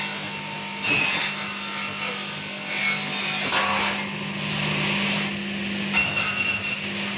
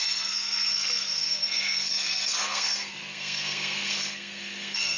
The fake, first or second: second